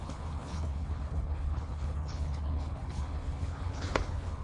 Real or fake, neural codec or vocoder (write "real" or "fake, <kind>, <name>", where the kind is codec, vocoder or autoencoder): fake, codec, HILCodec